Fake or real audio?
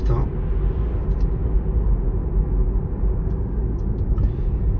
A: real